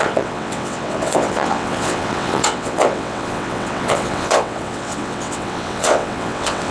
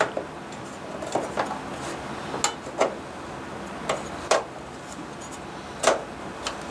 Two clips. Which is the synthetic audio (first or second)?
first